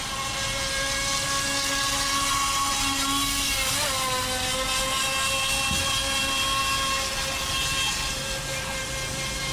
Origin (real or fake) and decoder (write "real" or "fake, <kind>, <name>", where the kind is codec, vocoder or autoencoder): real